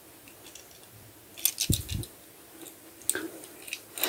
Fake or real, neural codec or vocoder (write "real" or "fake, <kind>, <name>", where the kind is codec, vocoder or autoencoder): real